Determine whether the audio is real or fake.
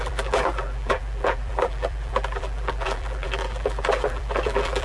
fake